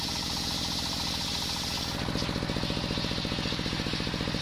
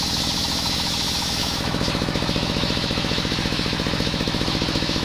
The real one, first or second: first